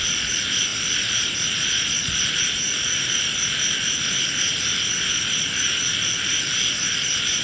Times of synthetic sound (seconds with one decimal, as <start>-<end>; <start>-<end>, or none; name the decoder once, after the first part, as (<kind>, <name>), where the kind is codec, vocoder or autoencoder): 0.0-0.7 (vocoder, BigVGAN v2); 5.1-7.4